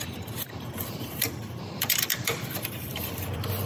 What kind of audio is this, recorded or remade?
remade